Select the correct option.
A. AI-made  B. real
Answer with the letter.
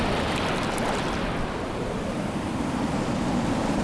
B